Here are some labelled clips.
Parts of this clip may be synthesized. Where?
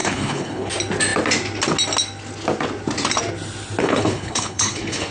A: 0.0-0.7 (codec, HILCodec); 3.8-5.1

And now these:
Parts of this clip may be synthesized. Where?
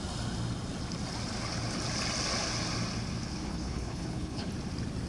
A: 3.5-4.5 (codec, HILCodec)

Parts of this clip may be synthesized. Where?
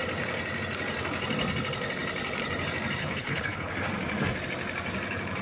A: 3.0-3.7 (codec, HILCodec)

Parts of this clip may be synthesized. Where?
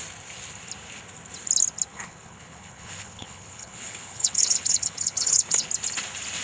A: 1.9-5.7 (codec, HILCodec)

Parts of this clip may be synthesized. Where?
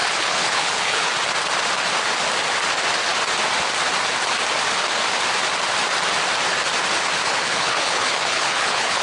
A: 0.0-1.1 (codec, HILCodec); 7.2-9.0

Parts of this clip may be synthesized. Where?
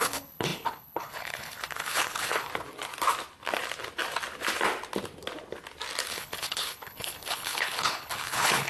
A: 0.0-2.5 (codec, HILCodec); 6.1-8.7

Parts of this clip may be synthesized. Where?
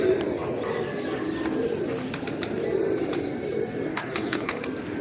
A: 3.9-4.6 (codec, HILCodec)